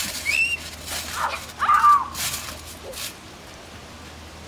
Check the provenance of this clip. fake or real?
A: real